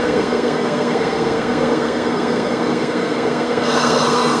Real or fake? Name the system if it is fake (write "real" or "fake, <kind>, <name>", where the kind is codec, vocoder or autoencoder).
fake, codec, SNAC